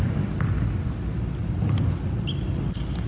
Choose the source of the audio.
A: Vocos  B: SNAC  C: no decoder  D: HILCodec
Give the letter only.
C